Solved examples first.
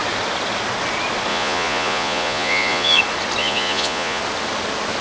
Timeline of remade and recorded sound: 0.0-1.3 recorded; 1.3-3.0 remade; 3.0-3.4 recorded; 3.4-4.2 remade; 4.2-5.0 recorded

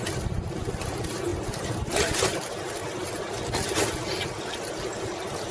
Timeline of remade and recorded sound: 0.0-5.5 recorded

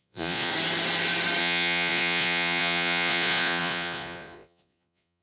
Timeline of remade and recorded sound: 0.0-0.5 remade; 0.5-1.4 recorded; 1.4-5.2 remade

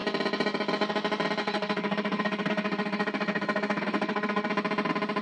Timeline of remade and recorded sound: 0.0-1.4 recorded; 1.4-4.5 remade; 4.5-5.2 recorded

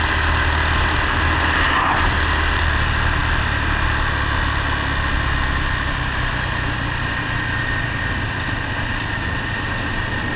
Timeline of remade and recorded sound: 0.0-10.4 recorded